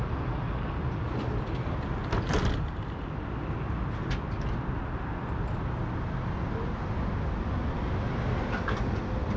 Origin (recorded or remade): recorded